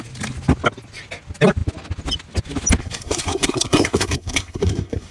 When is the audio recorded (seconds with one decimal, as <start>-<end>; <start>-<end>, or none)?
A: 0.0-2.8